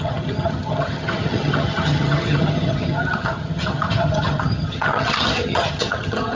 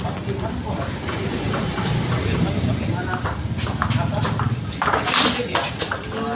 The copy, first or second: first